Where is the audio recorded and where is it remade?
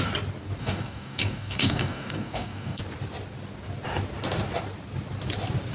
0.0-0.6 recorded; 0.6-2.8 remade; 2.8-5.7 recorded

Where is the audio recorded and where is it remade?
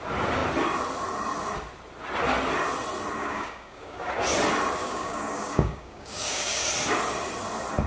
0.0-3.2 recorded; 3.2-4.1 remade; 4.1-4.8 recorded; 4.8-6.6 remade; 6.6-7.9 recorded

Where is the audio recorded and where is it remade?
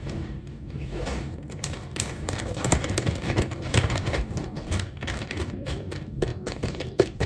0.0-7.3 remade